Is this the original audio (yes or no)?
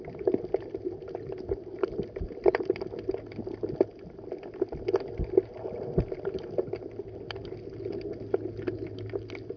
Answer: yes